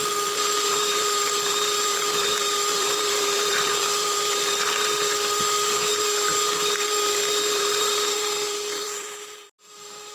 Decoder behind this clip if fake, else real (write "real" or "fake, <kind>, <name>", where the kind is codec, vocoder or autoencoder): fake, vocoder, BigVGAN v2